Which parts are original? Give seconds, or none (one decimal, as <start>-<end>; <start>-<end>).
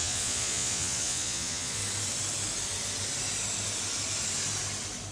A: 1.8-5.1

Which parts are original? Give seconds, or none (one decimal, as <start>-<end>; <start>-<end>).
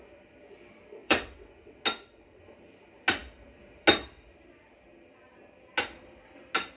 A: 0.0-1.0; 1.5-1.9; 2.4-6.8